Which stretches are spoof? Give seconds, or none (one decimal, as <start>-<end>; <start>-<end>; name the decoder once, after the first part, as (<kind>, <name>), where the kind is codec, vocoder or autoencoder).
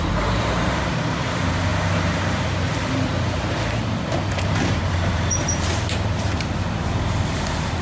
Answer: 0.0-7.8 (vocoder, BigVGAN v2)